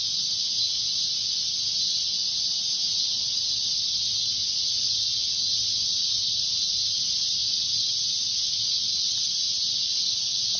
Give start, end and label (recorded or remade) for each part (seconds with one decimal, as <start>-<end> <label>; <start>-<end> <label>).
0.0-10.6 recorded